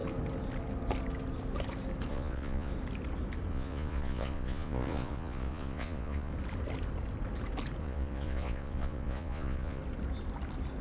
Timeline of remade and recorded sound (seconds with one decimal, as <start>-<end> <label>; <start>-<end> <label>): 0.0-2.1 recorded; 2.1-2.7 remade; 2.7-3.5 recorded; 3.5-6.3 remade; 6.3-7.8 recorded; 7.8-9.8 remade; 9.8-10.8 recorded